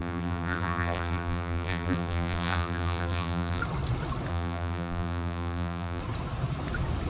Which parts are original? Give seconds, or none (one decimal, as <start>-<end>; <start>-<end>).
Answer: 3.6-4.3; 6.0-7.1